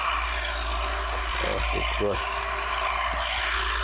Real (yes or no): yes